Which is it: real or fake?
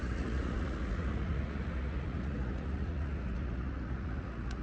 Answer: fake